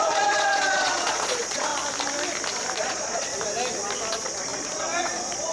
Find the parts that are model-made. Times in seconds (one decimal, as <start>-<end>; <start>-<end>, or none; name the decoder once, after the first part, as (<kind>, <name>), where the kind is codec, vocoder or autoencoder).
0.0-1.7 (vocoder, Vocos); 2.8-3.3; 4.1-5.5